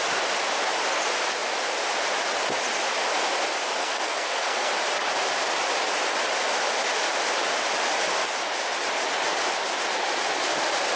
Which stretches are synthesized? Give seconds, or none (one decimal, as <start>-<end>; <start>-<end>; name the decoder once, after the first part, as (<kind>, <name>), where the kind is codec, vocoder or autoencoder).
3.8-4.7 (codec, SNAC)